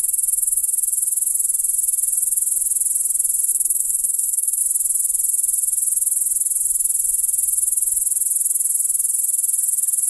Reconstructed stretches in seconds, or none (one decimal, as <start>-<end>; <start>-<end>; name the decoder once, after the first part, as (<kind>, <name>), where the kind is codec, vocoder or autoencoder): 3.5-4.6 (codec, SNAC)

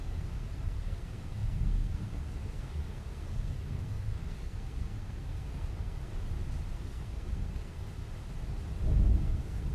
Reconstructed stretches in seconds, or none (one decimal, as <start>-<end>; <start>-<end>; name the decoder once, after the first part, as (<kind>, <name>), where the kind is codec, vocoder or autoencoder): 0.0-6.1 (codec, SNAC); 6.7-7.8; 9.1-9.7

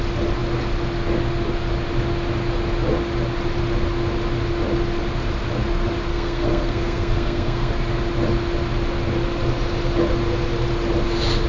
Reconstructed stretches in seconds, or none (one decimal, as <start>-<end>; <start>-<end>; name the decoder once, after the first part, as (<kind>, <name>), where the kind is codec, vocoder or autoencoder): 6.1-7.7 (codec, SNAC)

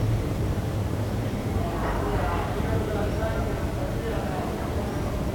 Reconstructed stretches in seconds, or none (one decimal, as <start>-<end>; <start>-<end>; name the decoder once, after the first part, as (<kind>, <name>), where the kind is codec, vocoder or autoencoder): 0.0-2.1 (vocoder, BigVGAN v2)